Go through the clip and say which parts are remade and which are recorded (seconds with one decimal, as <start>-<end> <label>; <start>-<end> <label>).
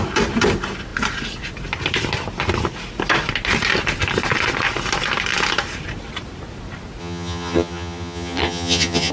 0.0-7.0 recorded; 7.0-9.1 remade